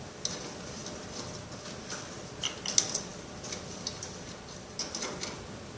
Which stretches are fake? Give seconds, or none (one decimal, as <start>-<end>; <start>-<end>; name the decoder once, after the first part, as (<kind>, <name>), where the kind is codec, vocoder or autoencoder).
none